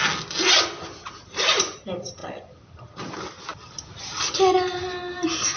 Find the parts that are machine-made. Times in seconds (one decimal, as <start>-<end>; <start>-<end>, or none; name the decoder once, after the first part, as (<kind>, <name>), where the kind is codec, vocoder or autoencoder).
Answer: 1.0-1.6 (vocoder, BigVGAN v2)